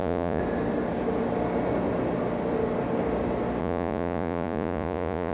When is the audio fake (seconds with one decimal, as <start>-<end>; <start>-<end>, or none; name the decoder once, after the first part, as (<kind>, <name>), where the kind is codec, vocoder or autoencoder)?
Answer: 0.0-0.4 (vocoder, Vocos); 3.6-5.3